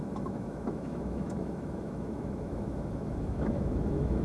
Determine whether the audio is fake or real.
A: fake